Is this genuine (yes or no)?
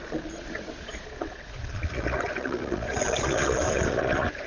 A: no